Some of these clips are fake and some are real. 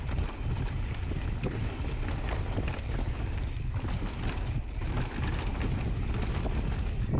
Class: real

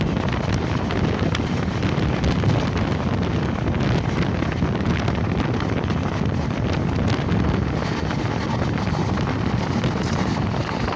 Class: real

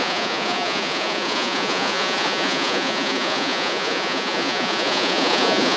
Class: fake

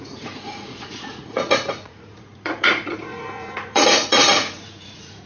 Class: fake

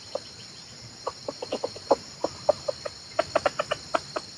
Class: real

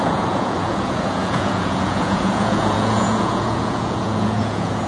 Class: fake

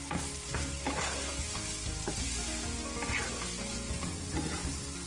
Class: real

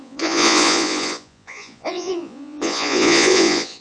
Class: fake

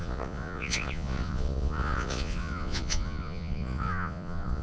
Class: fake